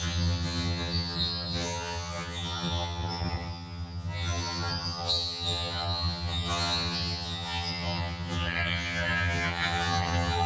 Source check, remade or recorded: remade